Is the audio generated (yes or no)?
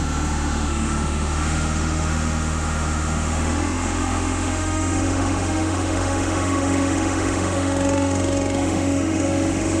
yes